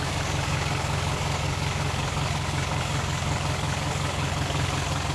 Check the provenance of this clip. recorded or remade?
remade